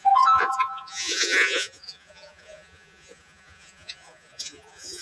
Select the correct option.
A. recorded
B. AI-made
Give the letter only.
B